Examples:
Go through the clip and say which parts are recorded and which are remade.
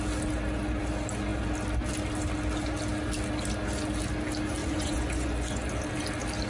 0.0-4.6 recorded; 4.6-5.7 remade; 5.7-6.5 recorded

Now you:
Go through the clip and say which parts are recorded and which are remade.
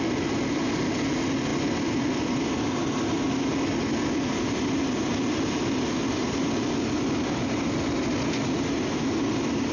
0.0-9.7 recorded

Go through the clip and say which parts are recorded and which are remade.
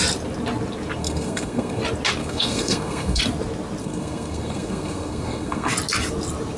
0.0-1.0 recorded; 1.0-1.8 remade; 1.8-2.2 recorded; 2.2-3.2 remade; 3.2-3.8 recorded; 3.8-5.7 remade; 5.7-6.6 recorded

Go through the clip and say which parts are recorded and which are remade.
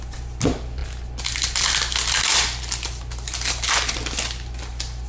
0.0-5.1 recorded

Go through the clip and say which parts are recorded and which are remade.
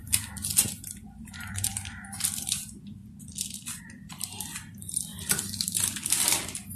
0.0-3.0 remade; 3.0-3.8 recorded; 3.8-6.8 remade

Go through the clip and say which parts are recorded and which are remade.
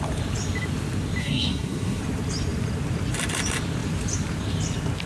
0.0-1.2 recorded; 1.2-2.0 remade; 2.0-5.1 recorded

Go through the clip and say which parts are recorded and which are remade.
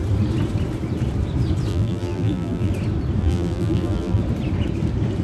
0.0-1.7 recorded; 1.7-2.7 remade; 2.7-3.2 recorded; 3.2-4.2 remade; 4.2-5.2 recorded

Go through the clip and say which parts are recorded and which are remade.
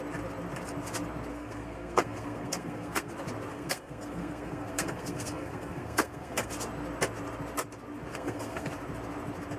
0.0-1.3 recorded; 1.3-3.1 remade; 3.1-3.5 recorded; 3.5-6.5 remade; 6.5-8.1 recorded; 8.1-8.7 remade; 8.7-9.6 recorded